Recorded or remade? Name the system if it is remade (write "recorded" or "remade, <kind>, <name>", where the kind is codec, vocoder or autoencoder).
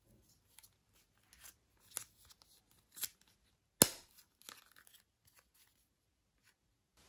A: recorded